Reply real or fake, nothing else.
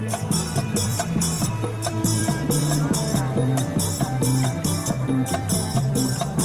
fake